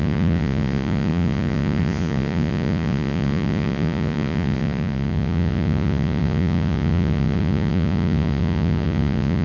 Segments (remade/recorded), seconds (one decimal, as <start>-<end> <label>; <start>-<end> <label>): 0.0-9.4 remade